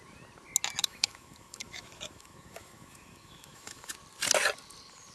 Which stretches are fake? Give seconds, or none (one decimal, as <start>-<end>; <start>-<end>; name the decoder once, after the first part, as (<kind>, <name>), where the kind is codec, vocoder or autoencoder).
0.8-3.9 (autoencoder, DAC-VAE)